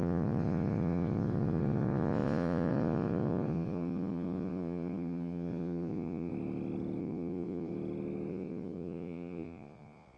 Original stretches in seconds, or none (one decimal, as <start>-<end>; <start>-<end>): 6.3-7.0; 7.7-8.3